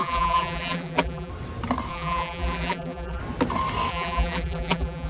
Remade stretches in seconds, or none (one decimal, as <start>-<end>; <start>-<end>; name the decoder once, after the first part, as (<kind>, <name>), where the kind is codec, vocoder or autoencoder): 0.0-1.3 (vocoder, BigVGAN v2); 1.9-3.2; 3.9-5.1